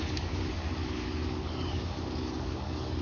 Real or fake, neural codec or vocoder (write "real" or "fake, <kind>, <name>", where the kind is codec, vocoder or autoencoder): fake, codec, DAC